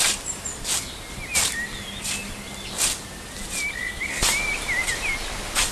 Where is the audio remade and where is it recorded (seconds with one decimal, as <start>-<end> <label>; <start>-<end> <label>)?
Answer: 0.0-5.7 recorded